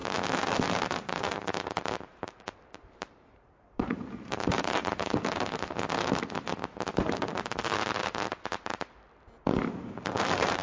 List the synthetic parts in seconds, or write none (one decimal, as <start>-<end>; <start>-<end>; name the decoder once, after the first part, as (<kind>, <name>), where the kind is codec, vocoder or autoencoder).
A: 0.5-4.8 (vocoder, BigVGAN v2); 9.5-10.6